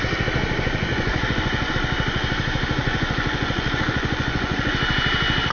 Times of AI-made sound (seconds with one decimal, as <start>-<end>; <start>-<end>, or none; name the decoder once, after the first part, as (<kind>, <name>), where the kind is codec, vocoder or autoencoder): 0.9-1.7 (vocoder, Vocos); 2.8-4.7